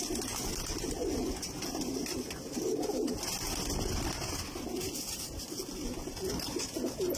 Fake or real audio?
real